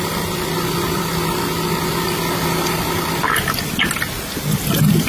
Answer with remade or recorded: recorded